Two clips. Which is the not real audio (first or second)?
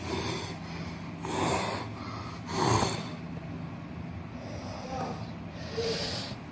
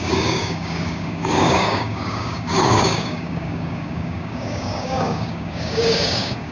second